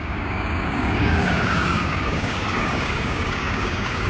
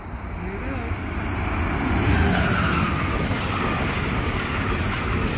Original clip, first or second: second